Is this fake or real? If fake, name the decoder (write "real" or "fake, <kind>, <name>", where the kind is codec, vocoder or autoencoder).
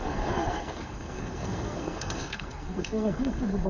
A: fake, codec, SNAC